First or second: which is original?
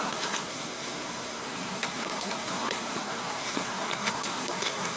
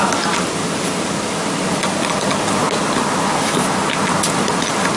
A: second